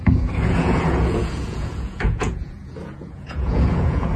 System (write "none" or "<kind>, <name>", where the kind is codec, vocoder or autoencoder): vocoder, Vocos